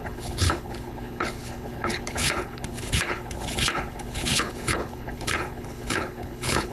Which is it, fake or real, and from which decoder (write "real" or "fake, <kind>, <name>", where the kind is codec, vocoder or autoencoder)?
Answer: fake, codec, HILCodec